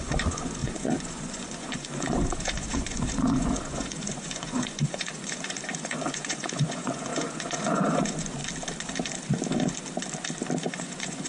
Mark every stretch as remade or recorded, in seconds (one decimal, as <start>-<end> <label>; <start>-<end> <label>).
0.0-8.4 remade; 8.4-10.7 recorded; 10.7-11.3 remade